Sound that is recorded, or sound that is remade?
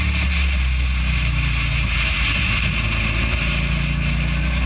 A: recorded